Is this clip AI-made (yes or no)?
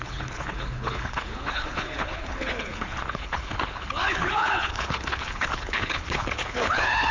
yes